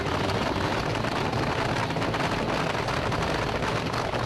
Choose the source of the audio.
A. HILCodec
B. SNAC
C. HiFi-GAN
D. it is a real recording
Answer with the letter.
D